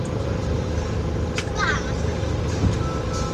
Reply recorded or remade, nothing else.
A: recorded